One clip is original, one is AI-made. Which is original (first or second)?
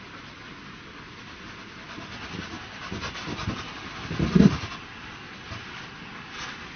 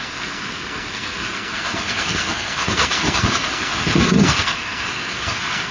first